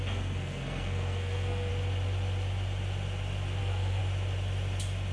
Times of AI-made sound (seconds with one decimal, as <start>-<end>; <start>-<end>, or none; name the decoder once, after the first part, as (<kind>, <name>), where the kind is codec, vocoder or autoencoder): 0.0-1.7 (codec, SNAC); 3.6-4.0